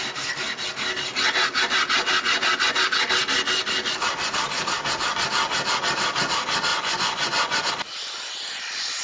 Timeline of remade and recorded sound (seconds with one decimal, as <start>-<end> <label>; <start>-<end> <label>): 0.0-6.7 recorded; 6.7-7.7 remade; 7.7-9.0 recorded